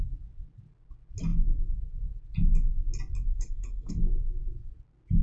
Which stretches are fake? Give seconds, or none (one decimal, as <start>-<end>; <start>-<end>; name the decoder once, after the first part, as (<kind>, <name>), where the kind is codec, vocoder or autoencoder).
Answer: 3.3-3.9 (codec, SNAC)